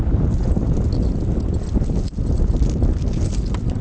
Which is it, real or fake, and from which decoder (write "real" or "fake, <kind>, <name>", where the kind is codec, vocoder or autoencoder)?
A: real